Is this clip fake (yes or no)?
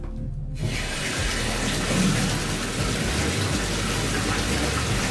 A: no